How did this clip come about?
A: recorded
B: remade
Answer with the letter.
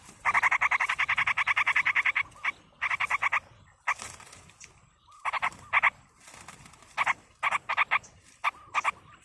A